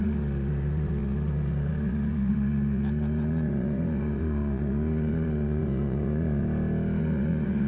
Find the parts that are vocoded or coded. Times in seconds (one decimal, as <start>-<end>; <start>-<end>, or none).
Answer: 0.0-6.4; 7.0-7.7